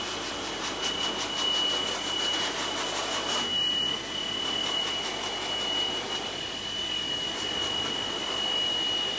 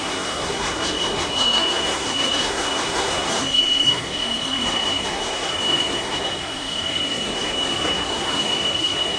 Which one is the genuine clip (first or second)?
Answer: first